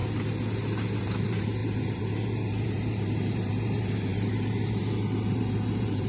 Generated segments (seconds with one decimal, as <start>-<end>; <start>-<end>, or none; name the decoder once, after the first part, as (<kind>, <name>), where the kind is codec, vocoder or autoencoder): 1.0-6.1 (vocoder, BigVGAN v2)